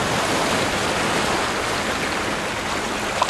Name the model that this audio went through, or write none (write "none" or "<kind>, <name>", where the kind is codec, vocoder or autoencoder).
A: none